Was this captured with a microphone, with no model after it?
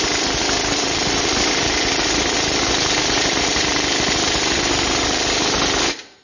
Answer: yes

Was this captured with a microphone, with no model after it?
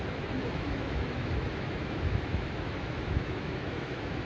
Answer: no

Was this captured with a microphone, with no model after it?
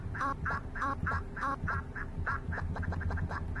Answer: yes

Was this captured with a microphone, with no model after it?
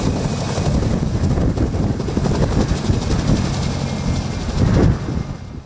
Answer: yes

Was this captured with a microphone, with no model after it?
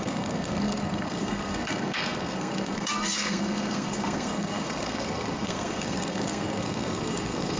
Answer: no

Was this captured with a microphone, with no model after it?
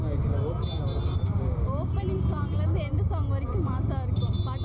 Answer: yes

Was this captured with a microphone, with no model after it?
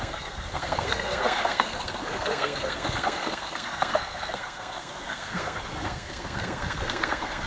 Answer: no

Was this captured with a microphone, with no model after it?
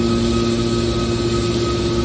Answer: yes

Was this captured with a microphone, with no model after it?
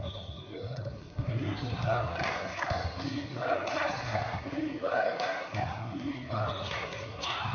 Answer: no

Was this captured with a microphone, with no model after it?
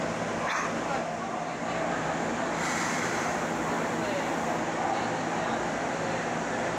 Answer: no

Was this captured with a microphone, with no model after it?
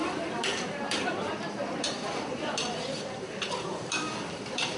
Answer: no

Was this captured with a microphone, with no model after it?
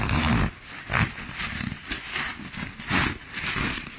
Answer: no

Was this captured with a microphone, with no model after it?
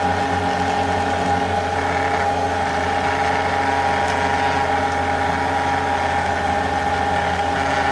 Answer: yes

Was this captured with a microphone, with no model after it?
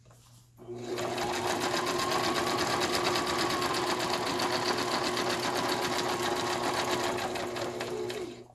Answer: yes